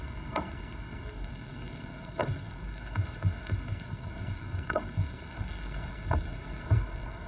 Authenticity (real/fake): fake